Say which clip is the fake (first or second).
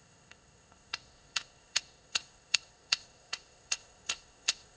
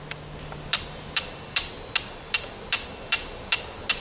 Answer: first